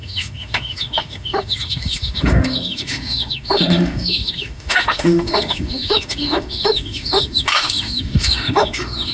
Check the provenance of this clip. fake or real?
fake